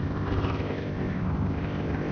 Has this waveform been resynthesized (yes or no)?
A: yes